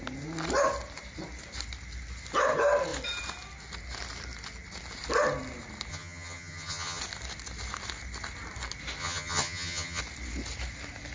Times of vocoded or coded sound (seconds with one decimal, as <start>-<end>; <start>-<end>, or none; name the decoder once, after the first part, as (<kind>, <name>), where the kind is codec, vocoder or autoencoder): 5.9-7.0 (vocoder, HiFi-GAN); 9.0-10.0